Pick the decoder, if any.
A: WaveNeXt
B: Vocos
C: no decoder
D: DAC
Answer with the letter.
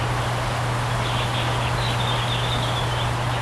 C